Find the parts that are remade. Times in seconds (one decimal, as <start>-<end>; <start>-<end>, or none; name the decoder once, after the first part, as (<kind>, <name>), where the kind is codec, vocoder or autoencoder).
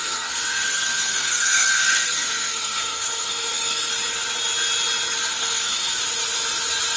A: 0.0-3.9 (codec, SNAC); 5.3-6.0